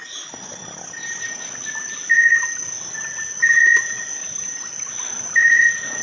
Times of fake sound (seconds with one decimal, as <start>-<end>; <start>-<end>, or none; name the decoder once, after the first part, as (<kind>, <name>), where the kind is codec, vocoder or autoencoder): 3.6-4.2 (vocoder, Vocos); 5.6-6.0